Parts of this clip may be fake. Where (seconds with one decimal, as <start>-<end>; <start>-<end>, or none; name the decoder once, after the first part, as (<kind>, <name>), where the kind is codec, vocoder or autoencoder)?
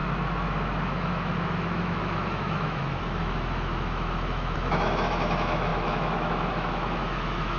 0.0-7.6 (autoencoder, DAC-VAE)